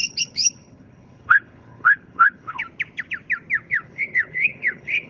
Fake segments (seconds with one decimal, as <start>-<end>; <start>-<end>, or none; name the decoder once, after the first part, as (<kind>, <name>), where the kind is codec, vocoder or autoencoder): 0.0-2.6 (codec, HILCodec); 3.7-5.1